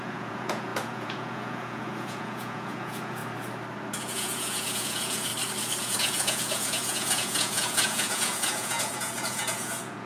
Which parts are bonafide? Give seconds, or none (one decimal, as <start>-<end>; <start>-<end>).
3.2-4.0; 5.3-5.8

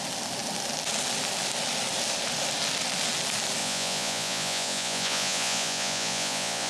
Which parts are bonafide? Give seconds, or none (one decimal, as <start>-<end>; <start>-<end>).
0.0-3.6

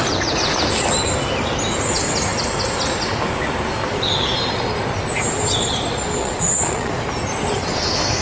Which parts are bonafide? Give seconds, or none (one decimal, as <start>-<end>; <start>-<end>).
0.0-6.2; 6.9-8.2